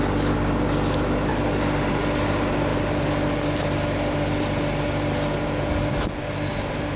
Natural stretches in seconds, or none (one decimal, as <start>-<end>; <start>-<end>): 0.0-7.0